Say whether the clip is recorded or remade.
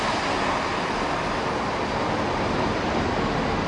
recorded